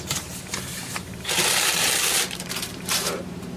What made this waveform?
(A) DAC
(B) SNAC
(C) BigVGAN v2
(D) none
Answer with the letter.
C